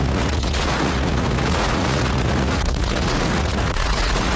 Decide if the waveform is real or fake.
fake